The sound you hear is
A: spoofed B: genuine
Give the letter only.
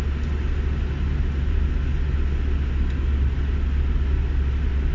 B